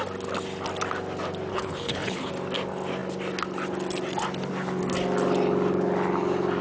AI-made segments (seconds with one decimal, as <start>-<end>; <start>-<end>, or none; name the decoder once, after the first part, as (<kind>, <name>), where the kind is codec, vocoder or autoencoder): 1.5-2.3 (codec, HILCodec)